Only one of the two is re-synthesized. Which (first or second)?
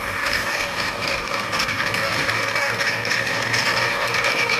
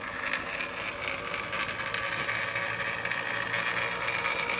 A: first